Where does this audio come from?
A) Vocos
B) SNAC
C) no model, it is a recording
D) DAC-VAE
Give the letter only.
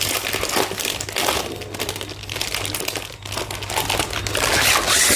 C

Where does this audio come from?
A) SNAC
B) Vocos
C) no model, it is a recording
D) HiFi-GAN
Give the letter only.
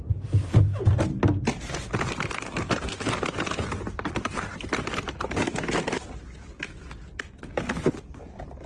C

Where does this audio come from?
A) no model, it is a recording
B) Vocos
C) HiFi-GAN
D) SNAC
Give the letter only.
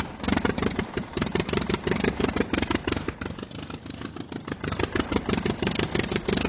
A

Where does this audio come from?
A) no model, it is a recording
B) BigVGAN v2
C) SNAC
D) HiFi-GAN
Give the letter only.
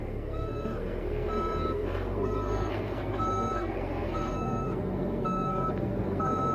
C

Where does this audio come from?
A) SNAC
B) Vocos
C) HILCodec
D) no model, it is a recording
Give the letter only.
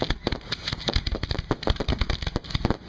D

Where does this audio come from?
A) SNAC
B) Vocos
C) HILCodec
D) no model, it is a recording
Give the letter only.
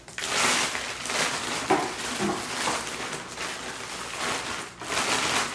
D